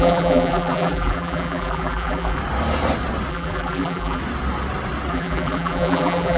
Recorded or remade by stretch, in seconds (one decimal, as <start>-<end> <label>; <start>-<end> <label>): 0.0-2.4 remade; 2.4-3.3 recorded; 3.3-4.2 remade; 4.2-5.1 recorded; 5.1-6.4 remade